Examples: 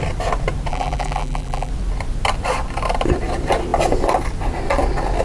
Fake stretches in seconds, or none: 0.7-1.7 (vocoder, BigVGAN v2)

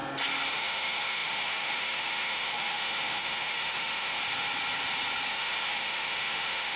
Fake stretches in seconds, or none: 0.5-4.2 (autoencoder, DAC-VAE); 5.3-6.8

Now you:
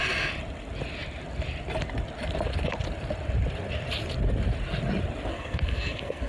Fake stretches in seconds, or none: 5.3-6.3 (codec, SNAC)

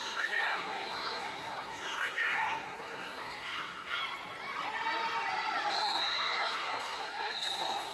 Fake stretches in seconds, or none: 0.0-4.0 (codec, SNAC); 5.7-7.9

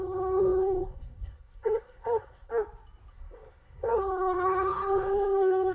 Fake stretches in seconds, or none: 0.0-2.5 (codec, SNAC); 3.1-5.7

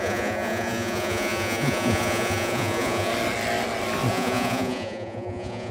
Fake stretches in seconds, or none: 0.0-3.1 (vocoder, Vocos); 4.1-5.7

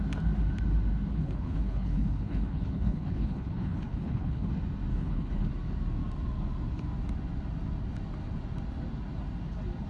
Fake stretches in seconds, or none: 1.1-4.5 (codec, HILCodec); 4.9-5.5